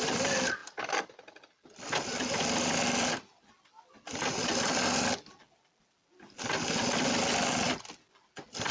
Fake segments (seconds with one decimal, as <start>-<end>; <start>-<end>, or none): none